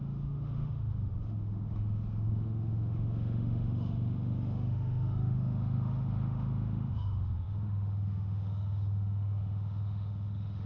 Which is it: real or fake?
fake